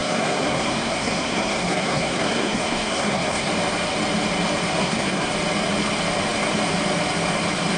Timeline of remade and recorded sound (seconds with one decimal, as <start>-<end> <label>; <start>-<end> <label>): 0.0-3.5 remade; 3.5-4.8 recorded; 4.8-5.3 remade; 5.3-7.8 recorded